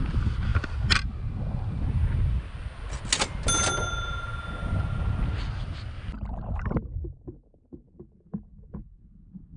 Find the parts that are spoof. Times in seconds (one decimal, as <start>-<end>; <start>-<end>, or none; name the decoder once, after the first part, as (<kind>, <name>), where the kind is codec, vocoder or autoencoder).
none